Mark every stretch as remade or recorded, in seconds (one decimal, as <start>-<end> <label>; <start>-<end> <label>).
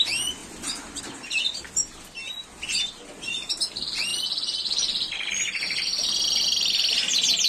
0.0-0.4 recorded; 0.4-1.0 remade; 1.0-4.1 recorded; 4.1-5.3 remade; 5.3-5.9 recorded; 5.9-6.9 remade; 6.9-7.5 recorded